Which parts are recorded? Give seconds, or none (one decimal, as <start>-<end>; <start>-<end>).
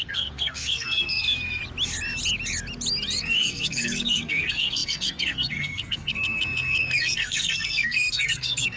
1.6-3.2